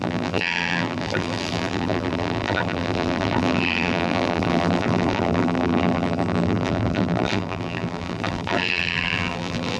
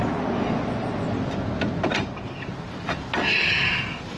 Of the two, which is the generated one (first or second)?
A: first